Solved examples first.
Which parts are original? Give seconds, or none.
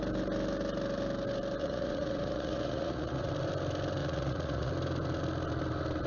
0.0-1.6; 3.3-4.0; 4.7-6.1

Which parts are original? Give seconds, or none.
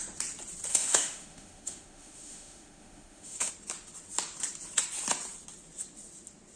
0.0-0.7; 3.5-6.6